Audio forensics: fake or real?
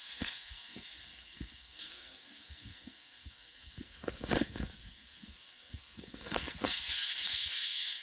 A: fake